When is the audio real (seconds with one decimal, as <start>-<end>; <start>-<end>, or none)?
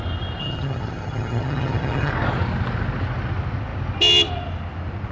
0.0-0.4; 2.1-5.1